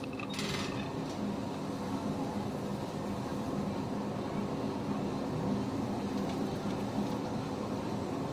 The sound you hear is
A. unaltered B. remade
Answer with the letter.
A